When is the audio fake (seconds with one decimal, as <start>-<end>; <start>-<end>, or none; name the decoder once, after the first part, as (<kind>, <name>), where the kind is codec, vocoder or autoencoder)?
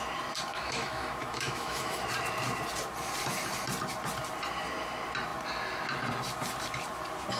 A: 0.5-2.0 (autoencoder, DAC-VAE)